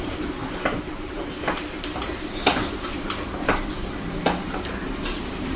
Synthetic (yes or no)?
yes